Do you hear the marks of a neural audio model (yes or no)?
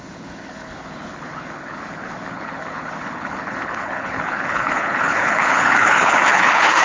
yes